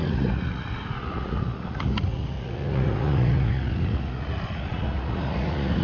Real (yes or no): no